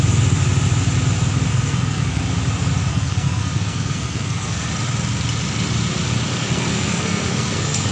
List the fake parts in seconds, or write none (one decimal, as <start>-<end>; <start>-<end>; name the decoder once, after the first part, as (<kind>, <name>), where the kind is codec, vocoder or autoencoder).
1.5-2.2 (codec, SNAC); 2.9-4.7; 6.4-7.9